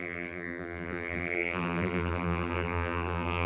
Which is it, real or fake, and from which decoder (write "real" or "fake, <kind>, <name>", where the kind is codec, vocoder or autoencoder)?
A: fake, vocoder, BigVGAN v2